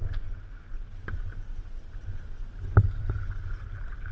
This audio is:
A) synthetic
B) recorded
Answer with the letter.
B